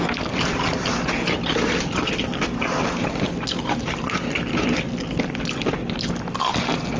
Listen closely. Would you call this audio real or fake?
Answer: real